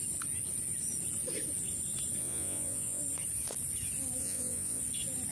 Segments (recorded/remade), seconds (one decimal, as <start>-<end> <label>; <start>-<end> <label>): 0.0-2.2 recorded; 2.2-3.0 remade; 3.0-4.2 recorded; 4.2-4.8 remade; 4.8-5.3 recorded